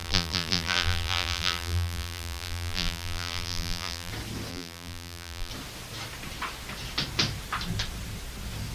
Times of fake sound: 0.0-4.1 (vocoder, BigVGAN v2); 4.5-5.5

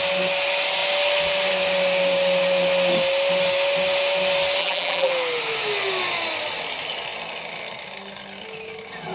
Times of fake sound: 4.6-5.1 (vocoder, BigVGAN v2)

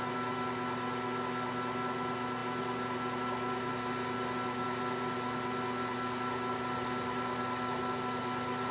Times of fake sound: none

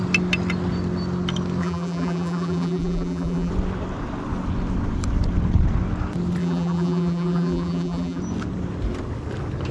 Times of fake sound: 1.6-3.5 (vocoder, BigVGAN v2); 6.4-8.2

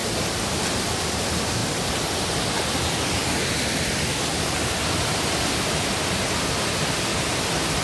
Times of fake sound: 0.0-0.6 (vocoder, BigVGAN v2); 7.1-7.8

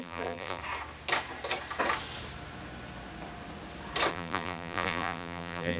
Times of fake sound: 0.0-0.6 (vocoder, BigVGAN v2); 4.1-5.8

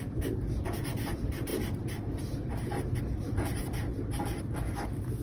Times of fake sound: none